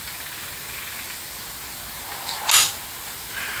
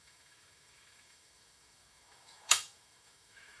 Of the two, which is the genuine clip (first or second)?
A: first